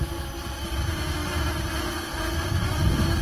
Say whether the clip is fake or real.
real